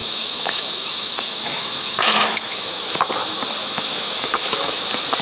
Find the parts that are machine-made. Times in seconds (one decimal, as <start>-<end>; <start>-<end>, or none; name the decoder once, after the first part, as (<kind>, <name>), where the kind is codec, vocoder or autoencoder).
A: 0.0-3.1 (autoencoder, DAC-VAE); 3.6-4.8